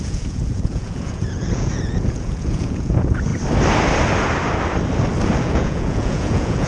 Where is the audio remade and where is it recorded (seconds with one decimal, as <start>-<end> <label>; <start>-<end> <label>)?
0.0-3.3 remade; 3.3-5.4 recorded; 5.4-6.7 remade